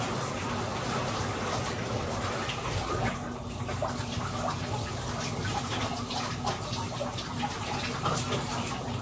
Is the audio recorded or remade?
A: recorded